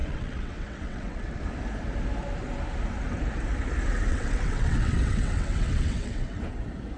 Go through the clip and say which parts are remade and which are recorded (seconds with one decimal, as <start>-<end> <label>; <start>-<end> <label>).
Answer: 0.0-1.4 remade; 1.4-4.1 recorded; 4.1-6.4 remade; 6.4-7.0 recorded